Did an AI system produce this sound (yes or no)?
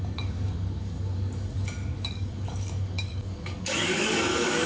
yes